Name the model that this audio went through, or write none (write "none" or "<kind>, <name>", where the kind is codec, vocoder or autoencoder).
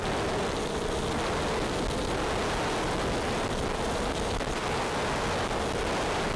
none